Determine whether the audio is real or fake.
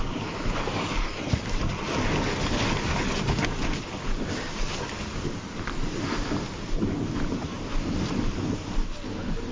real